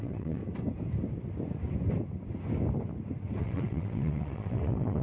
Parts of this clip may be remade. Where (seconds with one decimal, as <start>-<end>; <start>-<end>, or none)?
0.0-0.4; 3.4-5.0